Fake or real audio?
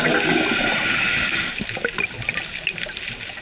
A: real